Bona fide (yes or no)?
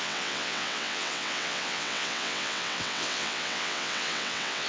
no